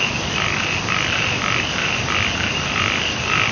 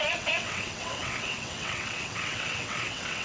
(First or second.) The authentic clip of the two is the first